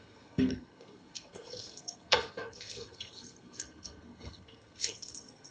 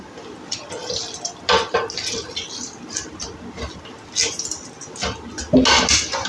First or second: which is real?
second